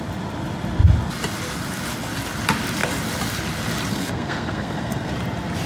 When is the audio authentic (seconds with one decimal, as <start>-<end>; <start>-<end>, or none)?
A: 0.0-3.9; 5.1-5.7